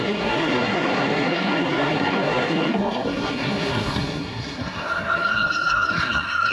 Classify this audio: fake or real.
fake